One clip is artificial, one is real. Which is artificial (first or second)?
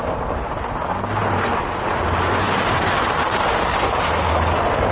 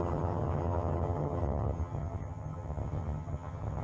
second